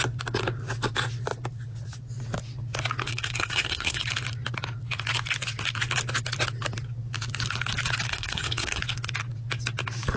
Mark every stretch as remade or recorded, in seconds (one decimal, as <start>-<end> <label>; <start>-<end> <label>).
0.0-3.0 recorded; 3.0-4.0 remade; 4.0-8.1 recorded; 8.1-8.8 remade; 8.8-10.2 recorded